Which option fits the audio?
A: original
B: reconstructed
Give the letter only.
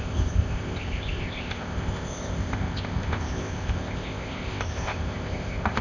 B